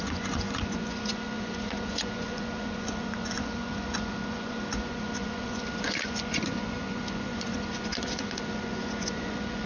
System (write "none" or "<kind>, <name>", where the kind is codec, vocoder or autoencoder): vocoder, Vocos